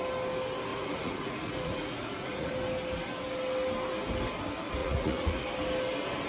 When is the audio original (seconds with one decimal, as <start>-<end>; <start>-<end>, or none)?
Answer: 0.0-0.7; 2.5-4.8; 5.4-6.3